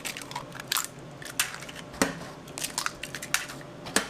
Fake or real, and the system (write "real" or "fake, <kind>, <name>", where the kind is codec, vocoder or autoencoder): real